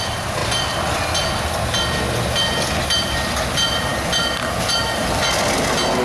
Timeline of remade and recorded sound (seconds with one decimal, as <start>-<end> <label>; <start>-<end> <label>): 0.0-6.0 recorded